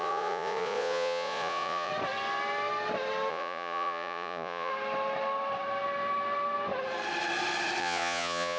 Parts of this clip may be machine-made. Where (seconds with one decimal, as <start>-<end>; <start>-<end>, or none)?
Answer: 0.0-1.9; 3.3-4.7; 7.8-8.6